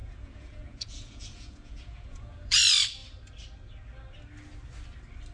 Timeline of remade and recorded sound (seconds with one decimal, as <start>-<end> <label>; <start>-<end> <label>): 0.0-2.6 remade; 2.6-5.3 recorded